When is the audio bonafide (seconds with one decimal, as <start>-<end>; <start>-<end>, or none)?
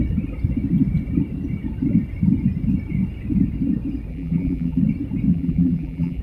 0.0-4.1; 4.8-5.3